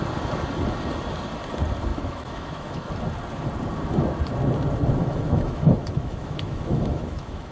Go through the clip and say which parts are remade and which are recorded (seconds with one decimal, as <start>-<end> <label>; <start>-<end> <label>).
0.0-1.9 recorded; 1.9-2.9 remade; 2.9-5.0 recorded; 5.0-7.5 remade